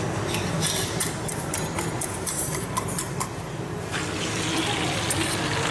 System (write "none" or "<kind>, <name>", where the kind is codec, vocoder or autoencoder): none